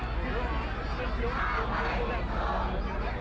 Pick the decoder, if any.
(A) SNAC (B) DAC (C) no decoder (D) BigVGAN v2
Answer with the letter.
C